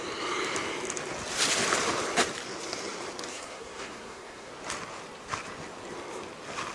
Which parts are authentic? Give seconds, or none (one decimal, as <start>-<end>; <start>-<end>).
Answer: 0.0-3.3; 4.5-6.7

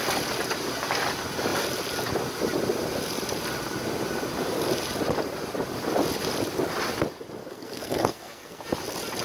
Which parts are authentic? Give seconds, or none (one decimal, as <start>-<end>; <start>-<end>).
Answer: 0.0-7.4; 8.6-9.2

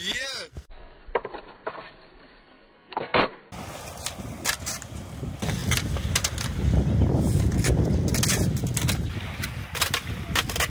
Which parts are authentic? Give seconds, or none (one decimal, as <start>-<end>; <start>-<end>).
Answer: 0.0-0.5; 1.0-2.4; 3.2-10.7

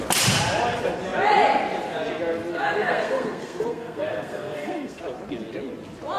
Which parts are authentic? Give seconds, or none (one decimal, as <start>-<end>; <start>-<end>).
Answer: 0.0-2.5; 5.0-6.2